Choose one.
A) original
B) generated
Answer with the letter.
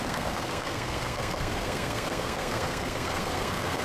B